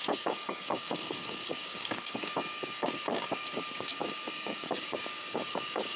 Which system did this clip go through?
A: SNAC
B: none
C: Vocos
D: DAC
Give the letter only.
D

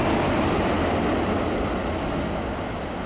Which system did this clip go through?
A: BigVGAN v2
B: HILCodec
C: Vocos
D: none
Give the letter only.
D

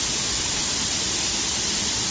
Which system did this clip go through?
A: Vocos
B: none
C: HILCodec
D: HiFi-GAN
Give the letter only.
B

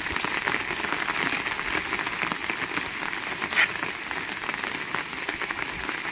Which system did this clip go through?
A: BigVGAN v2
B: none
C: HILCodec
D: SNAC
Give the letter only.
B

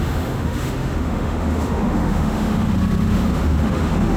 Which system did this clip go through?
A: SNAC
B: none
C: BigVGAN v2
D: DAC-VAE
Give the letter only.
D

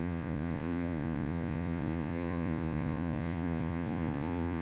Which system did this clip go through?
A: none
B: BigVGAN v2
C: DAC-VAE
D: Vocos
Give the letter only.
D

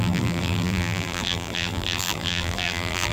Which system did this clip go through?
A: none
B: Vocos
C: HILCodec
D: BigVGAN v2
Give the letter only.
D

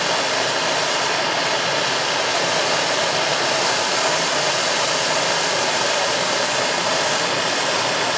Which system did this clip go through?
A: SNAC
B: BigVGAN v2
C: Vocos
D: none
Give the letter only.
D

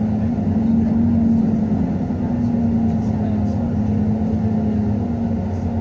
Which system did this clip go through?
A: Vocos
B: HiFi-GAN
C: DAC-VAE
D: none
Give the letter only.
D